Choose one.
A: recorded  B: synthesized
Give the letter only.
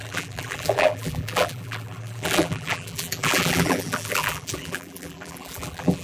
B